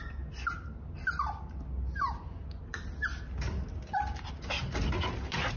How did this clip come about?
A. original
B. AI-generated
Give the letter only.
A